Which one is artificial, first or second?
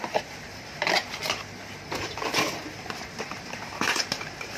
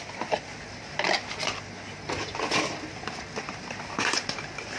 first